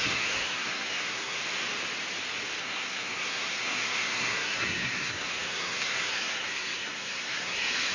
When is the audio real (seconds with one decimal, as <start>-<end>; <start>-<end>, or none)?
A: 1.4-2.6